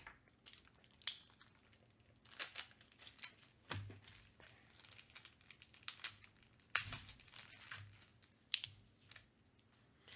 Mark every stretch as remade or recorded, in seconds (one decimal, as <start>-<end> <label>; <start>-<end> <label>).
0.0-10.2 recorded